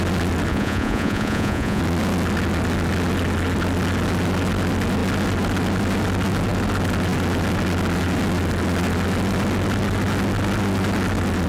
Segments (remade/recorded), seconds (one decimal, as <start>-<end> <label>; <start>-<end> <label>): 0.0-0.5 recorded; 0.5-1.8 remade; 1.8-11.5 recorded